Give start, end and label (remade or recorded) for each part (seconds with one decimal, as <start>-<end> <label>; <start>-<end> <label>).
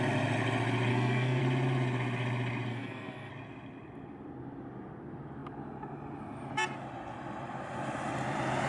0.0-0.9 recorded; 0.9-1.4 remade; 1.4-2.7 recorded; 2.7-3.3 remade; 3.3-8.7 recorded